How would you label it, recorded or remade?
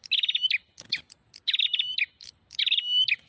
recorded